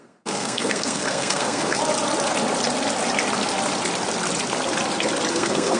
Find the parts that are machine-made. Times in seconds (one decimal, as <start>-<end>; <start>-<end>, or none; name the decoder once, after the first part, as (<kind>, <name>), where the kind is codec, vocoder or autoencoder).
0.0-1.8 (codec, SNAC); 5.3-5.8